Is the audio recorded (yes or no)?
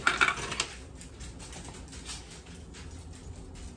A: yes